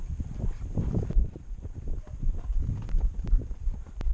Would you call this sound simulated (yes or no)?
yes